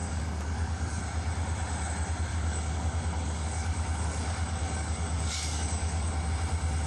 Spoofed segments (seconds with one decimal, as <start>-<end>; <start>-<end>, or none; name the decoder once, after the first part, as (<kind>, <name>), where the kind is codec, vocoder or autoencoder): 0.0-1.0 (codec, DAC); 2.3-6.1